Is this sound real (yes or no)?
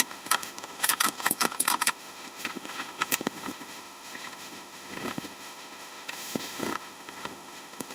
no